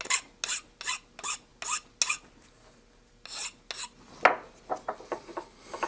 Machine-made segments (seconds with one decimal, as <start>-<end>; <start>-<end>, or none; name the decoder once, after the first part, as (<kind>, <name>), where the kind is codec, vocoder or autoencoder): none